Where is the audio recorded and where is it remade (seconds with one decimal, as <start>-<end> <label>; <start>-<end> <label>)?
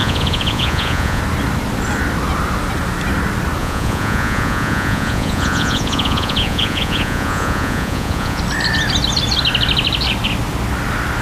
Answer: 0.0-1.2 remade; 1.2-3.6 recorded; 3.6-8.4 remade; 8.4-11.2 recorded